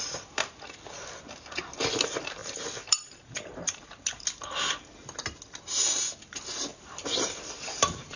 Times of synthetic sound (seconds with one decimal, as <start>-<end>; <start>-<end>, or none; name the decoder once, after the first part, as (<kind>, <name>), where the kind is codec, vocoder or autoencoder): 2.4-4.4 (vocoder, BigVGAN v2); 6.7-8.2